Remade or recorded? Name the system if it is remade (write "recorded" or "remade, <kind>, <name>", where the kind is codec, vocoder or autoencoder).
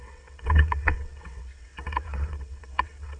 remade, vocoder, WaveNeXt